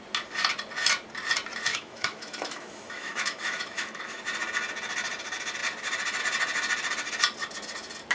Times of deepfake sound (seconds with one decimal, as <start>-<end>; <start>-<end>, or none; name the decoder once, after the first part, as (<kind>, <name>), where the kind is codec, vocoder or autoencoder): 1.7-4.2 (autoencoder, DAC-VAE)